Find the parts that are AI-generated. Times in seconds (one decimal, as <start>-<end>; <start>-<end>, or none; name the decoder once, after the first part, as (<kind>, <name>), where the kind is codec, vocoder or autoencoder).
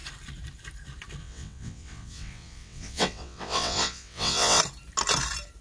1.2-4.6 (vocoder, WaveNeXt)